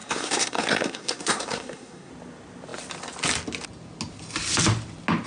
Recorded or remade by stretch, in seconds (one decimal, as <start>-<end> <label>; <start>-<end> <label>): 0.0-2.1 remade; 2.1-5.3 recorded